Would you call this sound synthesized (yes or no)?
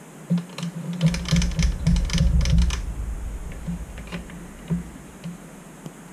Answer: no